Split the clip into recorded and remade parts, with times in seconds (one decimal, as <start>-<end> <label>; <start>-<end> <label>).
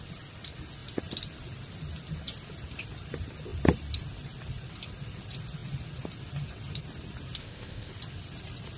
0.0-7.4 recorded; 7.4-7.9 remade; 7.9-8.8 recorded